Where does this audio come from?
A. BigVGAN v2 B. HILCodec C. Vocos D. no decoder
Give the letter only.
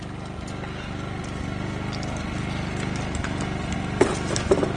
D